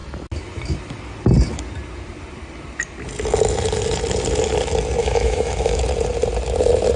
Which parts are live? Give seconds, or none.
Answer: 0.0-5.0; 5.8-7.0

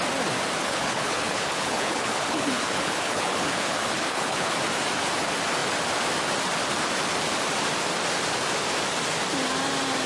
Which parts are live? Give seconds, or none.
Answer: 0.0-0.6; 4.5-10.1